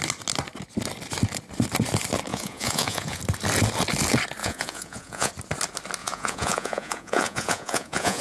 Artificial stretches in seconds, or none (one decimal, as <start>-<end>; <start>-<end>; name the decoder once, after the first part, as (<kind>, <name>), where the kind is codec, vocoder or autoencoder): 2.3-3.2 (vocoder, Vocos); 4.4-5.3; 6.0-8.2